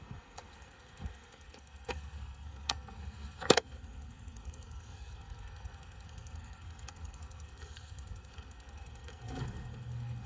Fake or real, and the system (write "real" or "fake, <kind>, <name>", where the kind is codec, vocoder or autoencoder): fake, codec, SNAC